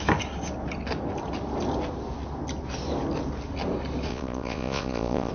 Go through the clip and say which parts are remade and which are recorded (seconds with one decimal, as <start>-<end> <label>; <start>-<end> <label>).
0.0-4.1 recorded; 4.1-5.3 remade